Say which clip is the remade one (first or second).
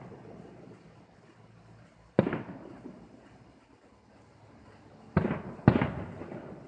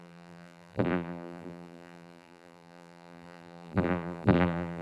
second